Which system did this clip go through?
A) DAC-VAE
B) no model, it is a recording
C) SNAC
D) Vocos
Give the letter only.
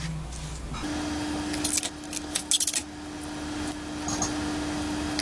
B